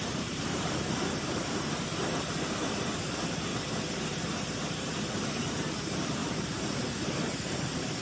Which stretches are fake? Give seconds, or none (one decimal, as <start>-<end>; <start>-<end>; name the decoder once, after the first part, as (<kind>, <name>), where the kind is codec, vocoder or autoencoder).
0.0-3.5 (vocoder, BigVGAN v2); 4.6-8.0